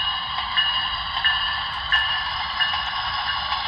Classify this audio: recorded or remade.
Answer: remade